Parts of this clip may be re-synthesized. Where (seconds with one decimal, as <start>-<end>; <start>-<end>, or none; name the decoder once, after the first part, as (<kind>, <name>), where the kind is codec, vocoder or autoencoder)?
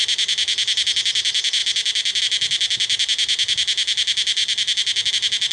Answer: none